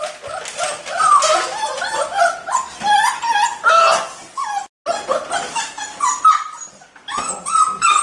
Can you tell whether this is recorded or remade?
recorded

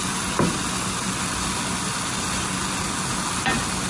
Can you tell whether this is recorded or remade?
recorded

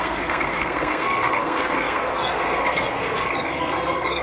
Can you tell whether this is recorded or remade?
remade